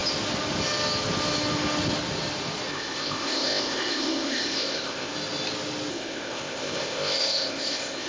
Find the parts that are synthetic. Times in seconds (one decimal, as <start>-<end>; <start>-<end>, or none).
2.7-5.1; 5.9-8.1

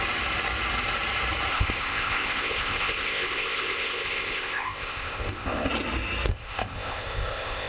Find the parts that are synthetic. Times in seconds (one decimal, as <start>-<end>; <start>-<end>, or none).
1.5-5.7; 6.3-7.7

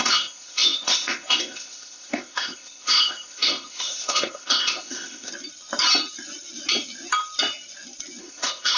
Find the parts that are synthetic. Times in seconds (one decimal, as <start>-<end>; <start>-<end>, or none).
0.0-5.3; 8.2-8.8